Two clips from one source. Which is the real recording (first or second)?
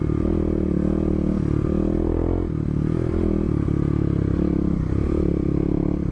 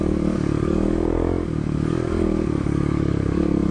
first